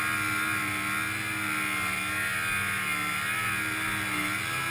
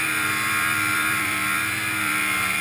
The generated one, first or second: second